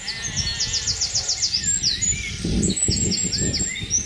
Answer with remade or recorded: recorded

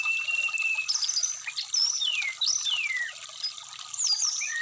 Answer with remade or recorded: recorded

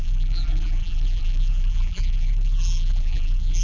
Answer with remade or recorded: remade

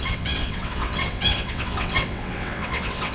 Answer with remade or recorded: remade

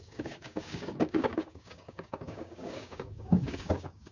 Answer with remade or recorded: remade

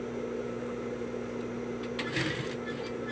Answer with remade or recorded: recorded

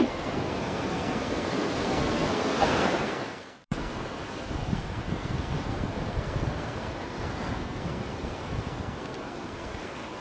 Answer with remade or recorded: remade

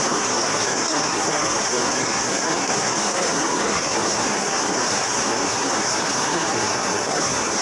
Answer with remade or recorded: remade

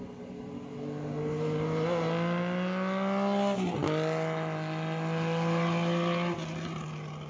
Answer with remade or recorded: recorded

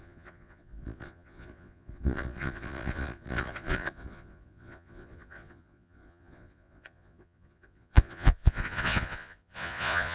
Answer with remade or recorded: remade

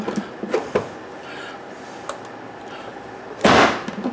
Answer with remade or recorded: recorded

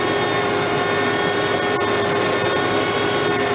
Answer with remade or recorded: recorded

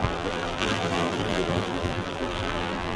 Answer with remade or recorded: remade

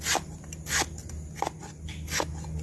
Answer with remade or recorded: recorded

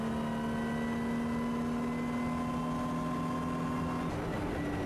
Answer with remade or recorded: recorded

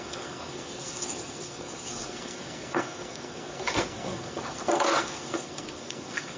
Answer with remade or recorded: remade